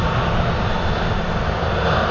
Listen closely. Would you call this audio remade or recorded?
recorded